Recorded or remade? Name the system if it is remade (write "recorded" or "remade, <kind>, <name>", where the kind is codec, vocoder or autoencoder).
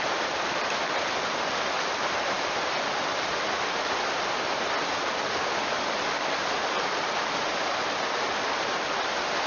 recorded